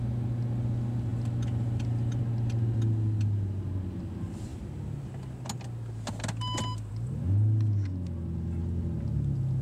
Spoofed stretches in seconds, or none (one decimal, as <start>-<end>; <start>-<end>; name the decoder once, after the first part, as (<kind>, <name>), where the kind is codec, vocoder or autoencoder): none